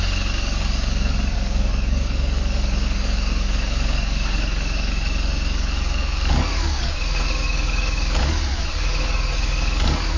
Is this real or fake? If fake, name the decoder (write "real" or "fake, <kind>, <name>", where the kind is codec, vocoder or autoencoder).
fake, codec, DAC